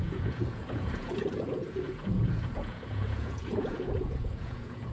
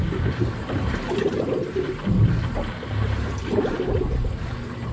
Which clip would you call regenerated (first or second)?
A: first